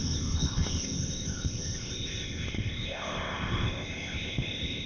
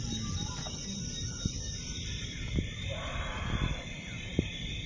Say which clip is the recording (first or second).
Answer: second